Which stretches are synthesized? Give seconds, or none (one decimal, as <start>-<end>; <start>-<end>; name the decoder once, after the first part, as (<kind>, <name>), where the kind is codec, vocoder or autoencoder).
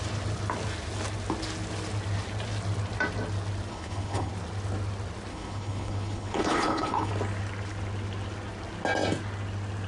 3.7-4.3 (codec, HILCodec); 5.3-7.1